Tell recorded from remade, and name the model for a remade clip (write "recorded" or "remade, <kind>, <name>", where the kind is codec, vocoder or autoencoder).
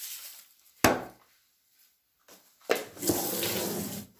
recorded